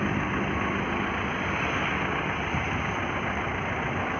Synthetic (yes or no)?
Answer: no